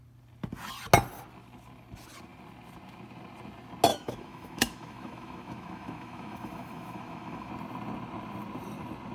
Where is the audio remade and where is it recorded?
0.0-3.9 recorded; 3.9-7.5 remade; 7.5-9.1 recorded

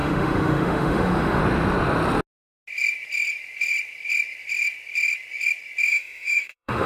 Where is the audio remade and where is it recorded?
0.0-1.4 remade; 1.4-5.9 recorded; 5.9-6.9 remade

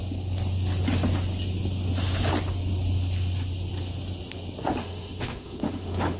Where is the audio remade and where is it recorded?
0.0-4.8 recorded; 4.8-6.2 remade

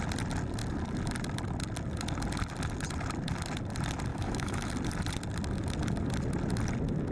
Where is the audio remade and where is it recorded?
0.0-4.1 recorded; 4.1-4.7 remade; 4.7-7.1 recorded

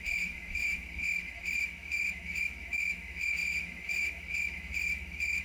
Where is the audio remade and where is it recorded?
0.0-5.4 remade